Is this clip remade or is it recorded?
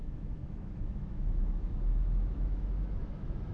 remade